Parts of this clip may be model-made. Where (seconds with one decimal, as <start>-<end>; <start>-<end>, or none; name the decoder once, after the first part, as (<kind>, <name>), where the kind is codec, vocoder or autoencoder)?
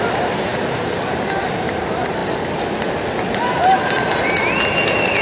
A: none